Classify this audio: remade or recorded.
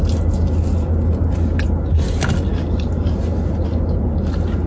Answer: recorded